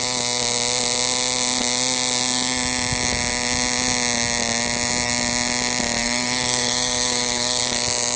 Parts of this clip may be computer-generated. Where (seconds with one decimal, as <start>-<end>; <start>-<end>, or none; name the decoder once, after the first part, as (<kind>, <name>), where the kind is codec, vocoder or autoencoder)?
6.0-7.6 (codec, DAC)